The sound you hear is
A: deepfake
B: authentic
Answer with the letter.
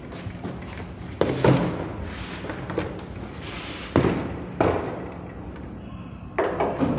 B